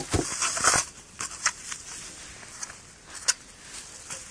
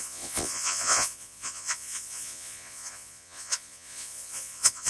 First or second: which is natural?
first